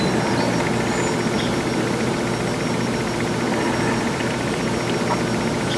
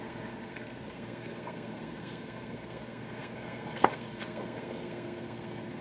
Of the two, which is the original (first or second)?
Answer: first